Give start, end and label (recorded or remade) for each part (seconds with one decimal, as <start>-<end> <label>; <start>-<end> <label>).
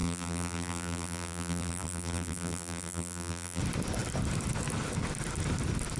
0.0-3.6 remade; 3.6-6.0 recorded